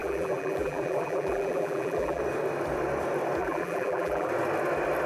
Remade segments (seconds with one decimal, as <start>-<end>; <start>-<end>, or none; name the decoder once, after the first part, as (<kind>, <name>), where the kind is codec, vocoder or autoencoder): 0.0-2.2 (vocoder, BigVGAN v2); 3.4-4.3